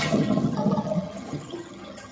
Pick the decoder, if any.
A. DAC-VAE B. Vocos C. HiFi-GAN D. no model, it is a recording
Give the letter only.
C